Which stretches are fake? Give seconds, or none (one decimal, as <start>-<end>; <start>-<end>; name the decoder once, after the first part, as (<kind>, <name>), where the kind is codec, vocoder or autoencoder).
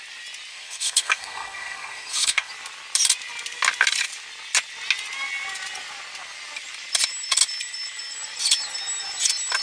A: 0.5-2.5 (codec, SNAC)